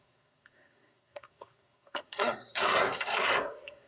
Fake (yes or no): yes